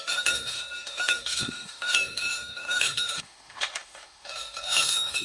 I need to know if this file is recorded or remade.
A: remade